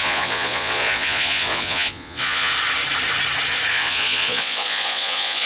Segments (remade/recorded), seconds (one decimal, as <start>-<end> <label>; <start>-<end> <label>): 0.0-2.5 remade; 2.5-3.7 recorded; 3.7-5.5 remade